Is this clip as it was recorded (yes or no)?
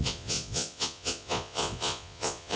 no